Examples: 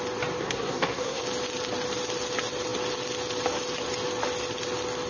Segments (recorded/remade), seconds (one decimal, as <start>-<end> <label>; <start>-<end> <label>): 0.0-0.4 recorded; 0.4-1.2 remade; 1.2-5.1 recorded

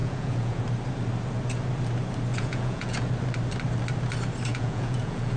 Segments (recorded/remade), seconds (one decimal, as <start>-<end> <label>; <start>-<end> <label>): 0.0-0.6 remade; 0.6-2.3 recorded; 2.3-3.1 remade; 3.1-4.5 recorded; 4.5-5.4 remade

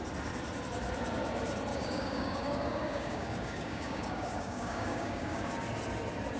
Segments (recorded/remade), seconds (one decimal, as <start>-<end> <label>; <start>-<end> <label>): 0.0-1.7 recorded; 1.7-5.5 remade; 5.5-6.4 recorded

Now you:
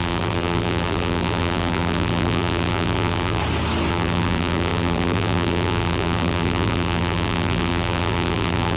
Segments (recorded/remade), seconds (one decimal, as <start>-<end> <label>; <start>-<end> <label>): 0.0-3.4 remade; 3.4-3.9 recorded; 3.9-8.8 remade